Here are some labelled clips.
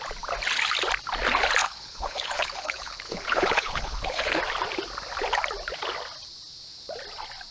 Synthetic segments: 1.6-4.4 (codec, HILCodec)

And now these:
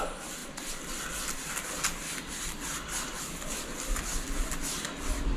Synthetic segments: 0.0-5.4 (vocoder, BigVGAN v2)

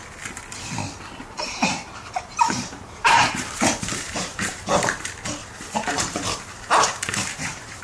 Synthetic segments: 1.2-4.6 (vocoder, BigVGAN v2); 5.4-7.8